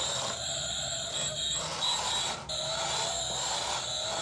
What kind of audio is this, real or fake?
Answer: real